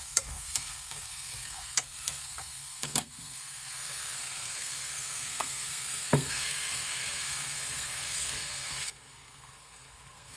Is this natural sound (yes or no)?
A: no